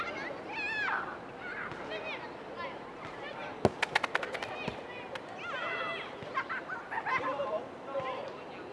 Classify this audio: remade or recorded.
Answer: recorded